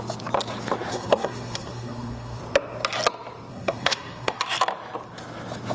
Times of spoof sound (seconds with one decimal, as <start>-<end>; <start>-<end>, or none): 0.9-2.4; 3.5-4.4